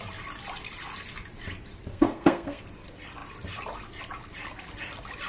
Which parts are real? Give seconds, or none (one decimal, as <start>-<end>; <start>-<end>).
0.0-1.9; 2.6-5.3